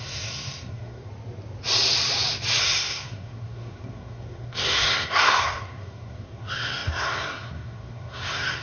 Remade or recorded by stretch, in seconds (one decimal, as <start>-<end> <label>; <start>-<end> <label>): 0.0-1.1 remade; 1.1-2.6 recorded; 2.6-8.6 remade